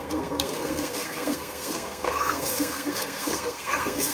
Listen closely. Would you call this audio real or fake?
fake